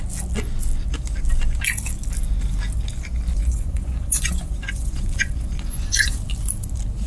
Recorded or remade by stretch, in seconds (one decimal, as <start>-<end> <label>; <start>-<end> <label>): 0.0-3.3 recorded; 3.3-6.2 remade; 6.2-7.1 recorded

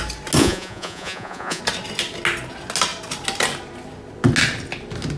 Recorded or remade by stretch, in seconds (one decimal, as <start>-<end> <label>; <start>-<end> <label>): 0.0-0.4 recorded; 0.4-1.6 remade; 1.6-5.2 recorded

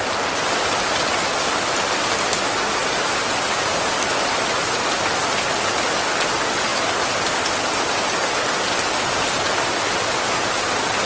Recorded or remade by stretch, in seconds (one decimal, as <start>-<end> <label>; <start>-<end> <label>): 0.0-11.1 recorded

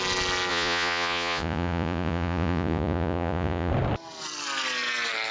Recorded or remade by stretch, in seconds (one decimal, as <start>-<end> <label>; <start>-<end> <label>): 0.0-0.5 recorded; 0.5-3.7 remade; 3.7-5.3 recorded

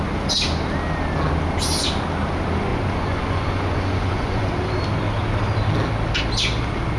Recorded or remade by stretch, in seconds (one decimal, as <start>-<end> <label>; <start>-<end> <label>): 0.0-2.7 recorded; 2.7-4.5 remade; 4.5-7.0 recorded

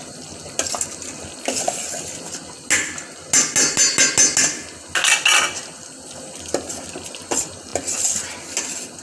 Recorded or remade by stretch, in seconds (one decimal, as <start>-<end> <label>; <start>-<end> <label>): 0.0-9.0 recorded